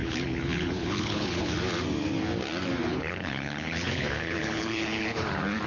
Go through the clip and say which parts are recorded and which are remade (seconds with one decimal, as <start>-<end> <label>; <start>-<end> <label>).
0.0-1.5 remade; 1.5-2.9 recorded; 2.9-5.3 remade; 5.3-5.7 recorded